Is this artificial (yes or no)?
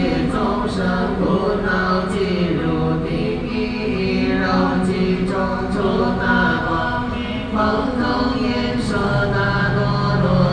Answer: no